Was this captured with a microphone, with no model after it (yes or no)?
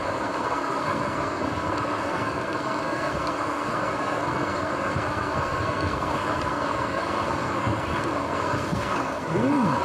no